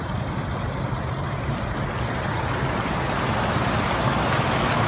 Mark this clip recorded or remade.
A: recorded